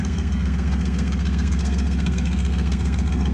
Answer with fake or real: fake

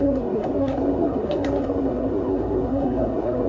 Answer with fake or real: fake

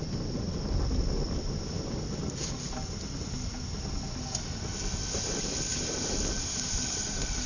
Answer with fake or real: real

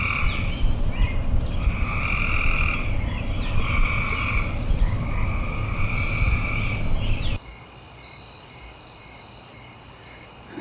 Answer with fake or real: real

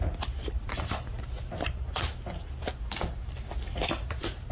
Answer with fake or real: real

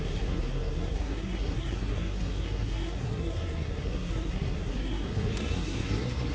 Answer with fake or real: fake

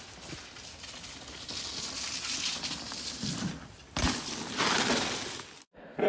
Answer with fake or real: real